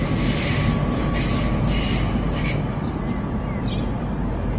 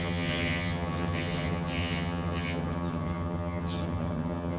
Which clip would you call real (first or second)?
first